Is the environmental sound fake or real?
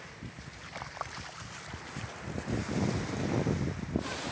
real